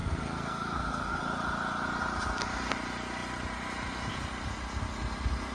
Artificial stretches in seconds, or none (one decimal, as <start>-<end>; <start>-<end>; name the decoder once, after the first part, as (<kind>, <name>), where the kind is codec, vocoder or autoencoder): 0.0-1.2 (codec, SNAC)